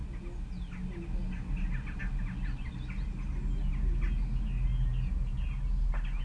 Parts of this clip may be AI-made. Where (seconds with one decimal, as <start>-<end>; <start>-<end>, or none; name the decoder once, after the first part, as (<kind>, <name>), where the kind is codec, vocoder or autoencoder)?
none